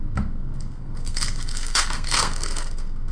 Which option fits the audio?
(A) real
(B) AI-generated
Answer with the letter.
B